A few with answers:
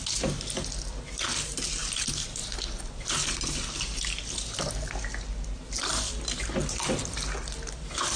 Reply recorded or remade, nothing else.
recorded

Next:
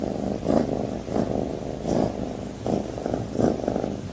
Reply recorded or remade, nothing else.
recorded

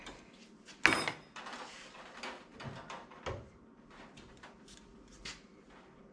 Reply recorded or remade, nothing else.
recorded